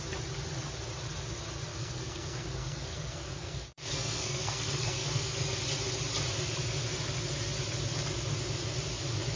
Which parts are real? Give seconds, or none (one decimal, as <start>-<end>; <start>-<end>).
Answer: 0.0-1.7; 5.6-9.3